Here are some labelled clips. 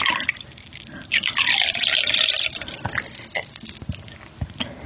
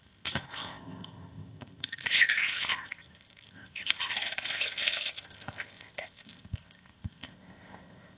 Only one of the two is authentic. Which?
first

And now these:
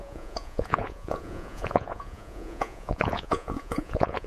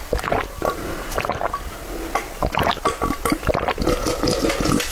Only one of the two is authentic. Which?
second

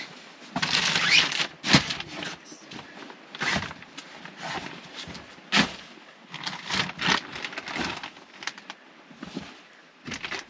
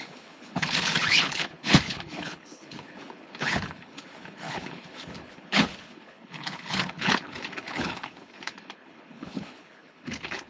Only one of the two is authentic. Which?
first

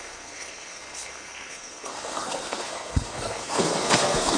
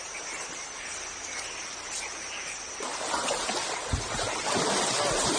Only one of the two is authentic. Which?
second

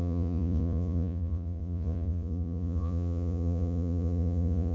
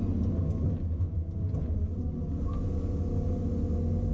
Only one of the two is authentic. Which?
second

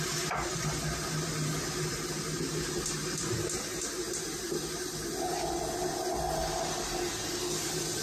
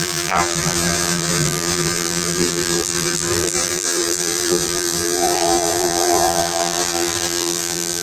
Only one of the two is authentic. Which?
first